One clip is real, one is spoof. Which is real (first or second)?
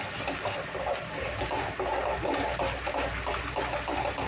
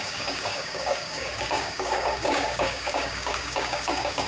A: first